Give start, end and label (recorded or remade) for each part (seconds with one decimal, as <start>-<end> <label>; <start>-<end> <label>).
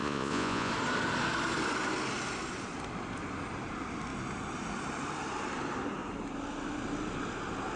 0.0-0.7 remade; 0.7-7.8 recorded